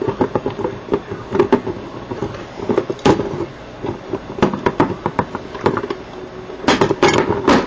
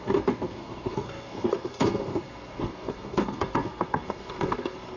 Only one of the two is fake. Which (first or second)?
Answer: second